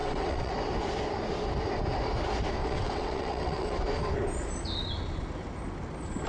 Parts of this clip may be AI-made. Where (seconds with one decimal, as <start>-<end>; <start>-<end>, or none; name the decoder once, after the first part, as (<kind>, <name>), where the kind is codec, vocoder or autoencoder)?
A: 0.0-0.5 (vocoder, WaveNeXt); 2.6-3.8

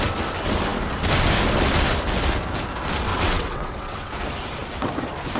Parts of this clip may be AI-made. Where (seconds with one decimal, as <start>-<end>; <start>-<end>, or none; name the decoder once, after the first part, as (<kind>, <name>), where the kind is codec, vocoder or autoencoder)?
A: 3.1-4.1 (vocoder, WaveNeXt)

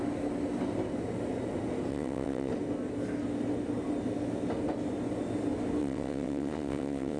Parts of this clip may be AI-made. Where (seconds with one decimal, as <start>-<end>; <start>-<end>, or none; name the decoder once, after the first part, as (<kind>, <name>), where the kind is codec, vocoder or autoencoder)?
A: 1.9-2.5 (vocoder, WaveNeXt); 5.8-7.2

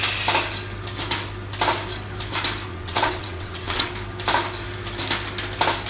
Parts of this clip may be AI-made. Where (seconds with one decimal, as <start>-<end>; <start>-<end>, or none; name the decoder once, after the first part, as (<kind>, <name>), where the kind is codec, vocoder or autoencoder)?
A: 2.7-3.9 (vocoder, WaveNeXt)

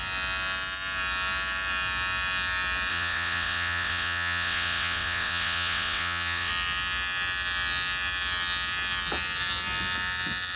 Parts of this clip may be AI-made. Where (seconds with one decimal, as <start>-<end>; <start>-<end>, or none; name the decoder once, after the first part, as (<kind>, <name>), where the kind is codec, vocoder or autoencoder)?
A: 2.9-6.5 (vocoder, WaveNeXt)

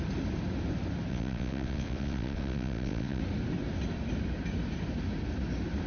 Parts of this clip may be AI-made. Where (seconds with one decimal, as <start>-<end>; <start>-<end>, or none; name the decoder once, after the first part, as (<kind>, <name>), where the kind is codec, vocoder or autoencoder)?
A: 1.1-3.2 (vocoder, WaveNeXt)

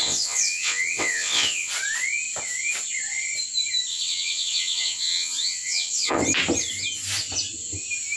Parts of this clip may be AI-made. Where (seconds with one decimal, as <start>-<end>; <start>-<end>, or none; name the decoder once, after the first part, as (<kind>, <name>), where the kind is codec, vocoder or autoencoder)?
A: 0.0-1.7 (vocoder, WaveNeXt); 3.9-6.2

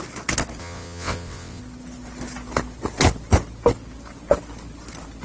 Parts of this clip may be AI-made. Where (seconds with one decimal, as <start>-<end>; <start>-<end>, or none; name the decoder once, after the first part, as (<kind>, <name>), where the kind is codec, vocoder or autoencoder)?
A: 0.6-1.6 (vocoder, WaveNeXt)